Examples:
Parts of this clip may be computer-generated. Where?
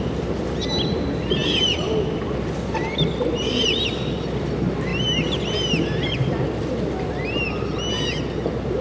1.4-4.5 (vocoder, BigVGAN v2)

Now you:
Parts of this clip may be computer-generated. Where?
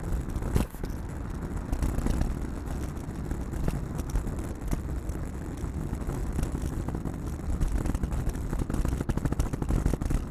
none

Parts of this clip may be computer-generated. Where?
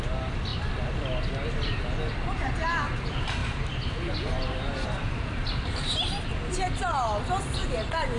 3.4-6.3 (vocoder, BigVGAN v2)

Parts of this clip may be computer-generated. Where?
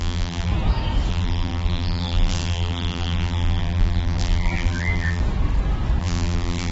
0.0-0.5 (vocoder, BigVGAN v2); 1.1-5.2; 6.0-6.7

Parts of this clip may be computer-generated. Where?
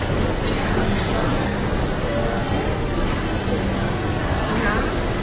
4.2-4.8 (vocoder, BigVGAN v2)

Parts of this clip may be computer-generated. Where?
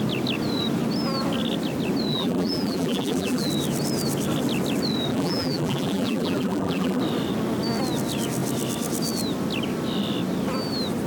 2.1-3.5 (vocoder, BigVGAN v2); 5.1-7.0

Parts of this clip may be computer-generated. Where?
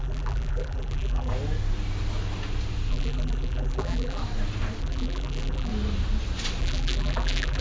0.0-1.3 (vocoder, BigVGAN v2); 2.9-4.2; 4.8-5.7; 6.6-7.6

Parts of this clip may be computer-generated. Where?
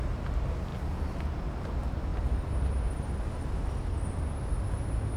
none